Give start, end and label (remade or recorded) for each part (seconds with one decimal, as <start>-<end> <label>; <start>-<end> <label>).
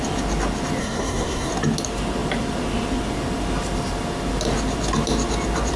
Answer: 0.0-0.8 recorded; 0.8-1.5 remade; 1.5-5.8 recorded